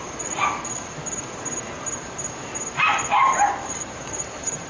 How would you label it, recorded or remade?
remade